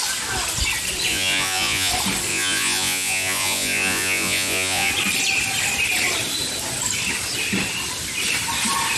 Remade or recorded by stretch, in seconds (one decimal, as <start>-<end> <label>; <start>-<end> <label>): 0.0-1.1 recorded; 1.1-1.9 remade; 1.9-2.3 recorded; 2.3-4.9 remade; 4.9-9.0 recorded